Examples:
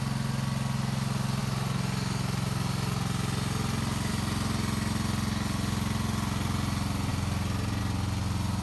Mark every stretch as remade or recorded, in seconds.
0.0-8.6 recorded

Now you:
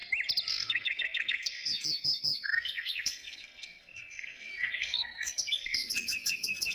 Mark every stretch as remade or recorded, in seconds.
0.0-0.5 recorded; 0.5-6.7 remade

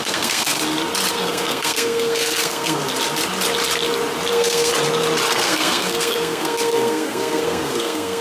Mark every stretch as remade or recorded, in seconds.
0.0-0.6 remade; 0.6-1.1 recorded; 1.1-2.8 remade; 2.8-4.3 recorded; 4.3-4.7 remade; 4.7-5.3 recorded; 5.3-8.2 remade